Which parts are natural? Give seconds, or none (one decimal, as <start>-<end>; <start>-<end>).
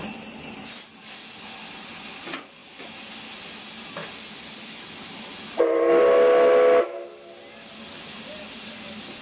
0.0-9.2